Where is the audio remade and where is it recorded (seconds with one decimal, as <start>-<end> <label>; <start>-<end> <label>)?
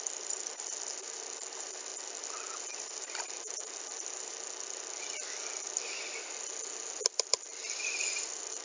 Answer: 0.0-8.6 recorded